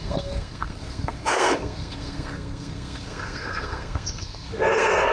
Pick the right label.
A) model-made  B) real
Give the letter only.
A